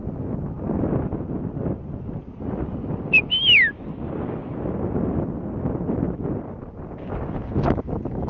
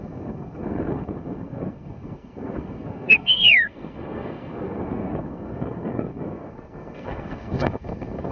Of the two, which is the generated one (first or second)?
second